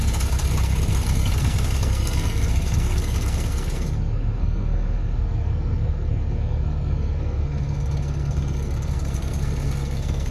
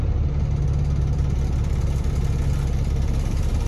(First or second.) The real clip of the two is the second